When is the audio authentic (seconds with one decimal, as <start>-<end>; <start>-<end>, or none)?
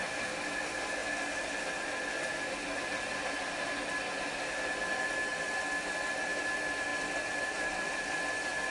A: 0.0-6.9; 8.2-8.7